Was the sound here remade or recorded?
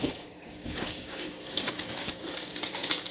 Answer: remade